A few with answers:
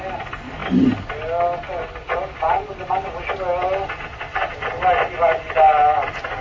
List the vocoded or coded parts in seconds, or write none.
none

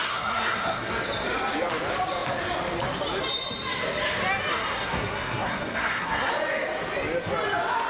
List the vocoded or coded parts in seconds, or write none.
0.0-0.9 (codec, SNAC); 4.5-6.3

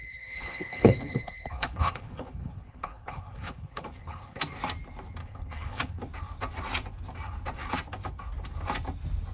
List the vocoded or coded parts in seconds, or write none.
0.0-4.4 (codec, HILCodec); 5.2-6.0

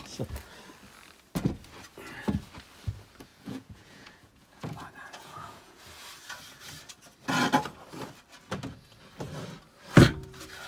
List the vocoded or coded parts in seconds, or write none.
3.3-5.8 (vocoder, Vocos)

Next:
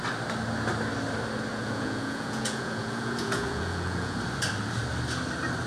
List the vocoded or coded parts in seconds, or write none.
1.5-4.2 (vocoder, Vocos)

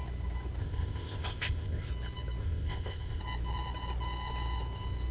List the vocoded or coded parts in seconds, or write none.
0.6-1.9 (codec, ZipCodec); 2.4-3.2

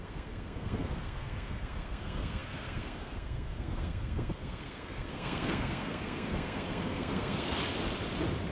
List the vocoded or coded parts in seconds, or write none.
0.0-7.6 (codec, SNAC)